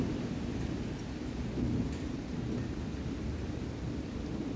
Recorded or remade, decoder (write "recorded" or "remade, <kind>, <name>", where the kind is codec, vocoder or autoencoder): recorded